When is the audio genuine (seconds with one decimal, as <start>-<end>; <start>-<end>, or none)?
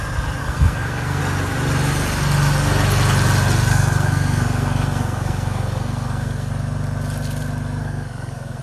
0.0-0.4; 1.2-3.7; 6.5-7.8